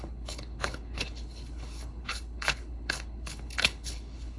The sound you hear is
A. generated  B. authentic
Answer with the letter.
A